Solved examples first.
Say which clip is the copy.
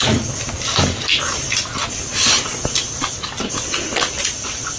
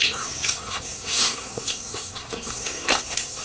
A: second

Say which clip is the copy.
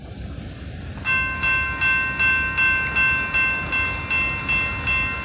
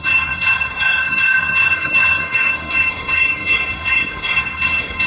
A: second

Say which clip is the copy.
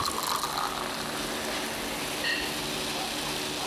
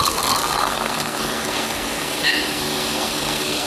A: second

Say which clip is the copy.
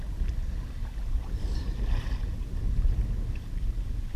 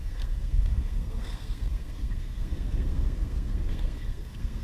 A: second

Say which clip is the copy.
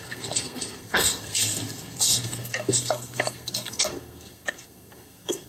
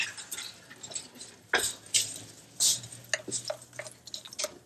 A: first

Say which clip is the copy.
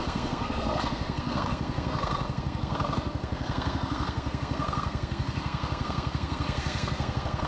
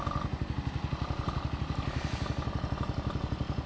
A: first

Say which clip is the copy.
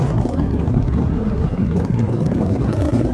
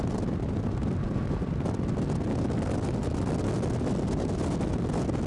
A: first